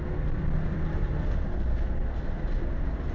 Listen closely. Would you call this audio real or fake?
real